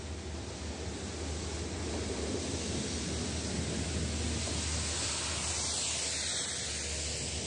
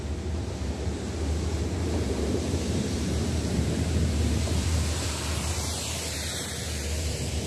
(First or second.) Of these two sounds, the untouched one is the first